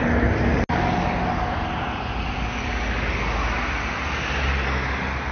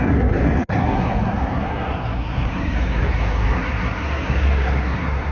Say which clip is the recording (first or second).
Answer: first